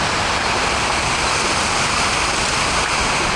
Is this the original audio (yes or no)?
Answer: yes